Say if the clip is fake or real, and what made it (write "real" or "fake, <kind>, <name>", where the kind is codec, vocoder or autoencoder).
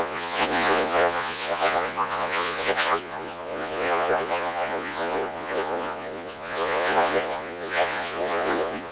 fake, vocoder, Vocos